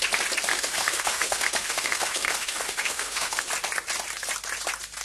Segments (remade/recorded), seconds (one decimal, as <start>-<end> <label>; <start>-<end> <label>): 0.0-0.5 recorded; 0.5-3.5 remade; 3.5-5.0 recorded